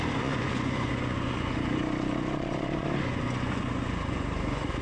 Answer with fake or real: fake